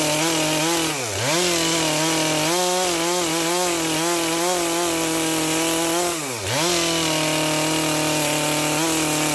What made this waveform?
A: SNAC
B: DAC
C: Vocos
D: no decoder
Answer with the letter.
D